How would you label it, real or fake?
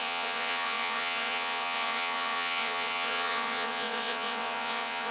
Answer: fake